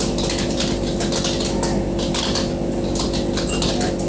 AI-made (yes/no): no